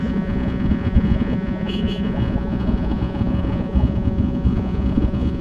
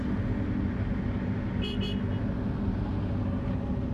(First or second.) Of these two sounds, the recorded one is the second